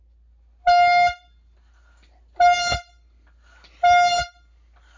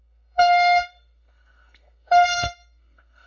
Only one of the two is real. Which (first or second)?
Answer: first